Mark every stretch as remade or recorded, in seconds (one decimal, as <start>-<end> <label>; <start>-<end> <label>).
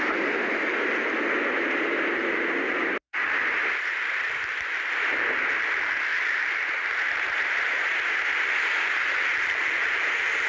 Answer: 0.0-2.8 recorded; 2.8-3.4 remade; 3.4-6.1 recorded; 6.1-8.3 remade; 8.3-10.5 recorded